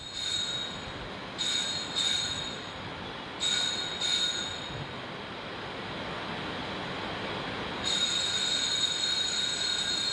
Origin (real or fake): real